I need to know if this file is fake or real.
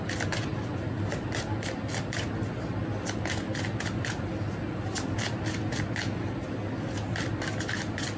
real